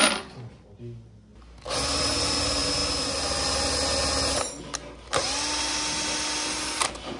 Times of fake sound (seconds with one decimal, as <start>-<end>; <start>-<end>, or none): 0.0-0.8